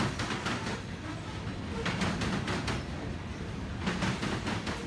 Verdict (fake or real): real